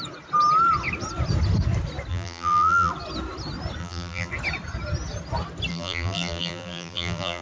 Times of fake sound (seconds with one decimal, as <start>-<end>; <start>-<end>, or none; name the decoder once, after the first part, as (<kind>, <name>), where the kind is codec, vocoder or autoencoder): 2.1-2.9 (vocoder, BigVGAN v2); 3.8-4.3; 5.7-7.4